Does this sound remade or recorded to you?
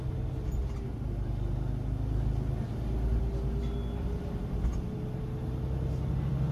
recorded